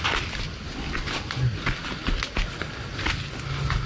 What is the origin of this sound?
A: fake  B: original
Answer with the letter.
B